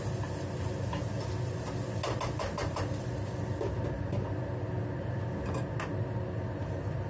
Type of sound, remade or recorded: recorded